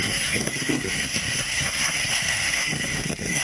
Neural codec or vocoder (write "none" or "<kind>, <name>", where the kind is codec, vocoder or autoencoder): codec, SNAC